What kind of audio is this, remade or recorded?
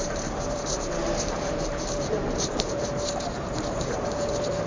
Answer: remade